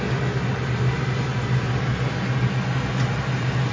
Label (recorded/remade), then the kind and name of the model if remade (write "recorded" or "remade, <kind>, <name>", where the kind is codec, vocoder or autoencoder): recorded